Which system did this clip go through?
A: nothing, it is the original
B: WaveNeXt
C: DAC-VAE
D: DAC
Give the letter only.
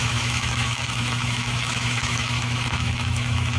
C